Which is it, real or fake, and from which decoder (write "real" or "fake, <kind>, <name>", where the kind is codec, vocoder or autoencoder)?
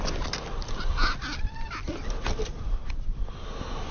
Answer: real